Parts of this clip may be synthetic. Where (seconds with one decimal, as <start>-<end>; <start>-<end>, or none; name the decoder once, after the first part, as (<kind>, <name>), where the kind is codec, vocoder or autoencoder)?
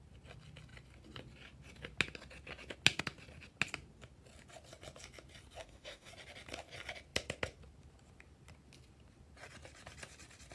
5.6-6.1 (autoencoder, DAC-VAE)